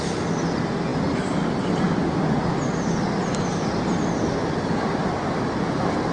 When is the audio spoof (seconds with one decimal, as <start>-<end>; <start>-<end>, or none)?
none